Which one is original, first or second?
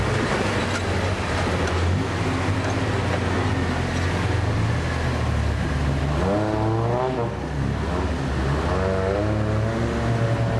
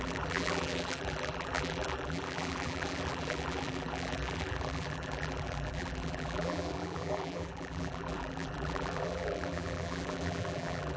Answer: first